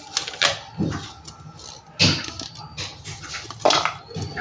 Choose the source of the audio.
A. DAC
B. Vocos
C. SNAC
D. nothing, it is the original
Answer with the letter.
D